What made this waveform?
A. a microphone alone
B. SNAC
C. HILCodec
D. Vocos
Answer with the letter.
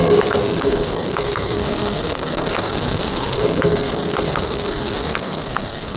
B